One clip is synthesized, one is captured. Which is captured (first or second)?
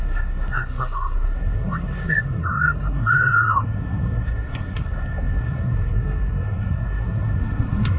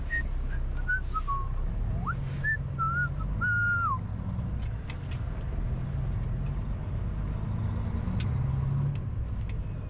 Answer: second